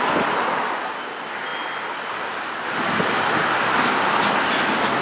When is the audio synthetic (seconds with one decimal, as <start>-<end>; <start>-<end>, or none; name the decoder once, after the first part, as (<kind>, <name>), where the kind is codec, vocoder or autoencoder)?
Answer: none